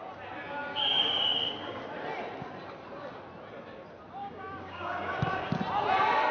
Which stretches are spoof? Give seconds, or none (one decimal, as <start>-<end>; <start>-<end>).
0.7-1.8; 4.2-5.5